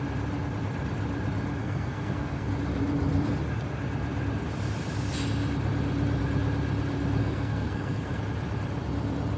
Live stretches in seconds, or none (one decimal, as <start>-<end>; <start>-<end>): 0.0-1.6; 2.5-7.2; 8.2-9.4